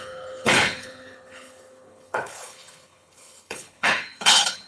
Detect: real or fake fake